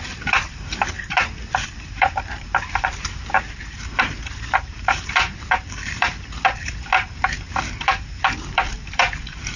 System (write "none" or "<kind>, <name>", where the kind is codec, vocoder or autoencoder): vocoder, BigVGAN v2